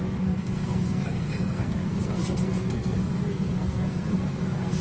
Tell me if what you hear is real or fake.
fake